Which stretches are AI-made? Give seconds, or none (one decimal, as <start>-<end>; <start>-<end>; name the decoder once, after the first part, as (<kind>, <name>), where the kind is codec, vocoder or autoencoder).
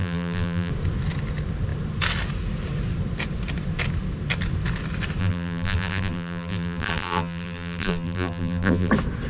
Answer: 0.0-0.7 (vocoder, BigVGAN v2); 5.2-8.9